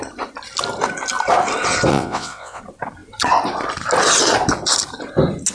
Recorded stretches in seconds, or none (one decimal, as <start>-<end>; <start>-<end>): 0.0-1.9; 2.6-5.5